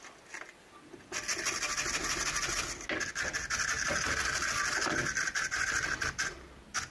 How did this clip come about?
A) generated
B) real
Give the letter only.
B